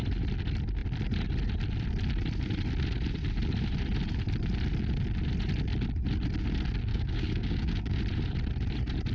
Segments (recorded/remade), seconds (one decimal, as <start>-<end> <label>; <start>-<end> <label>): 0.0-6.9 recorded; 6.9-8.0 remade; 8.0-9.1 recorded